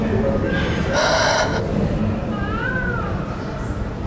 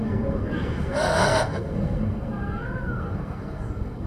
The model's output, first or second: second